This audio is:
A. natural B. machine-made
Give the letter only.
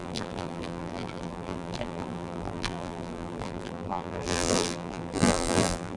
B